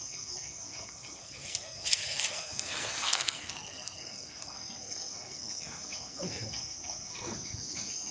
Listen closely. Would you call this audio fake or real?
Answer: fake